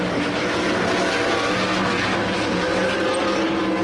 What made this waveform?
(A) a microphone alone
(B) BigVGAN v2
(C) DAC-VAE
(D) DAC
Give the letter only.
A